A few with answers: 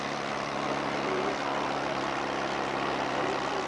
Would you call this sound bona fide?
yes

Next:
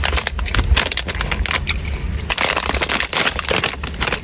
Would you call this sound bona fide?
yes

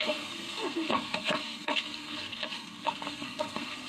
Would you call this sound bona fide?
no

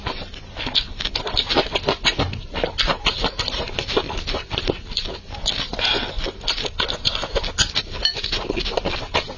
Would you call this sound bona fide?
yes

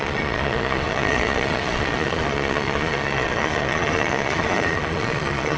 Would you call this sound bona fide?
no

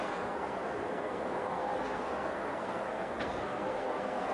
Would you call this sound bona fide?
no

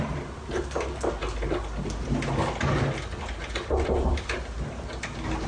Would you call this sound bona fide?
yes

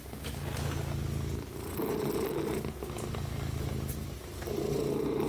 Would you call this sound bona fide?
yes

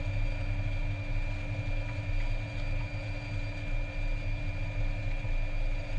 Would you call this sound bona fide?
yes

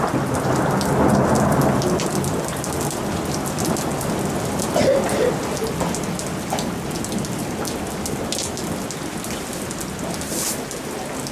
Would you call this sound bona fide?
yes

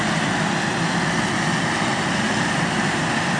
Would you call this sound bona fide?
yes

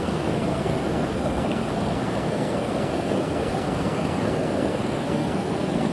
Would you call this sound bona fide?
no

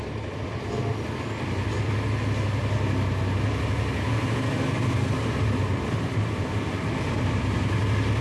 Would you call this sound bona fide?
yes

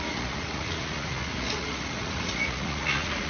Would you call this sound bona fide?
no